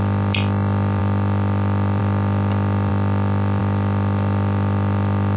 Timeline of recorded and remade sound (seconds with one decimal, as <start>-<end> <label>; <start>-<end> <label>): 0.0-5.4 recorded